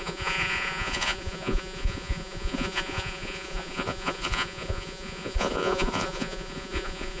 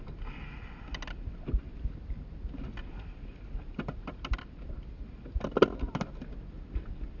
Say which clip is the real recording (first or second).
second